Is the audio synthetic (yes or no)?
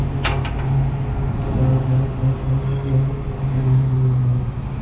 no